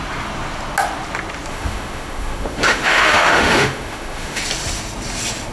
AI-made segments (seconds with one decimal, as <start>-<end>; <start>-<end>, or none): 1.5-4.4

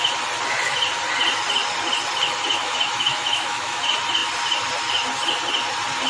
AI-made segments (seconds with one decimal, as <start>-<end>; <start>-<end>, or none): 2.6-3.8

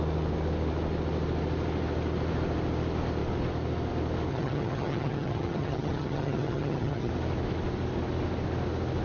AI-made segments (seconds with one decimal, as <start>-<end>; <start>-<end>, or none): 4.3-7.1

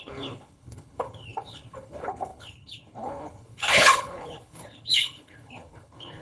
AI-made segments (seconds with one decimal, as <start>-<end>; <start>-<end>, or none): 0.0-6.2

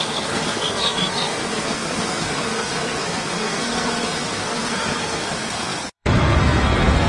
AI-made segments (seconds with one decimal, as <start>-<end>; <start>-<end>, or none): 0.0-7.1

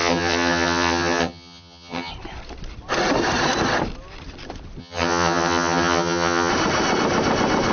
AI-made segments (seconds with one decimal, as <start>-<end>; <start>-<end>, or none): 0.0-2.1; 4.8-6.5

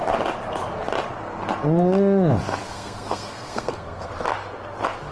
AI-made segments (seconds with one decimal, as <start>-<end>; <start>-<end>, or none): 2.6-4.1

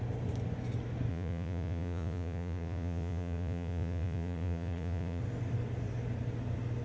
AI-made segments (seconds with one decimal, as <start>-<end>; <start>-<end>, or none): 1.1-5.2